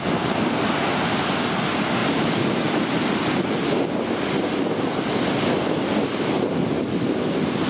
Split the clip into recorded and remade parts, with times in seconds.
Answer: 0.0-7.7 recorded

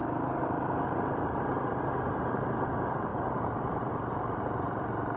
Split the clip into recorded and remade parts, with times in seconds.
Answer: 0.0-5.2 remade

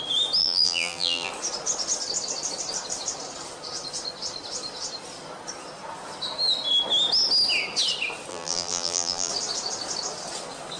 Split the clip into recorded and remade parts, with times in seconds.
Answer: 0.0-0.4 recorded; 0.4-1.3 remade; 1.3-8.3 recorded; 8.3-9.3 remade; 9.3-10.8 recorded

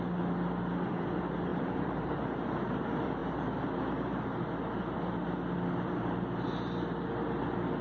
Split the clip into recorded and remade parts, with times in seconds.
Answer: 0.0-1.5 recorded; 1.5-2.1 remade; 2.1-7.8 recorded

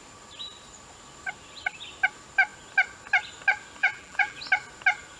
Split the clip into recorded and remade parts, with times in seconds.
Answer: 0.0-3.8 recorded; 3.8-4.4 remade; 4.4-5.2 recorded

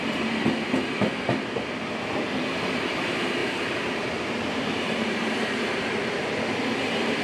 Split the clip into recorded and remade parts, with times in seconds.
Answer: 0.0-3.4 recorded; 3.4-7.2 remade